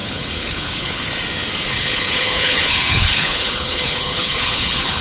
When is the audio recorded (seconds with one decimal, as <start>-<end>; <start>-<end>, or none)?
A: 1.1-1.7